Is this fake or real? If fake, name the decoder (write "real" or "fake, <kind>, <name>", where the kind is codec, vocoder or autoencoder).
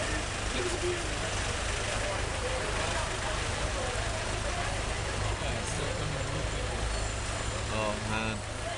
real